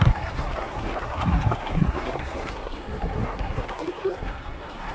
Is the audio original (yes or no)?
no